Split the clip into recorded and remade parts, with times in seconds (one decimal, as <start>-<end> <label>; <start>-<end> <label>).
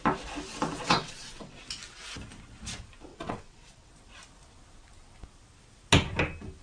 0.0-0.8 recorded; 0.8-1.6 remade; 1.6-3.1 recorded; 3.1-3.9 remade; 3.9-6.6 recorded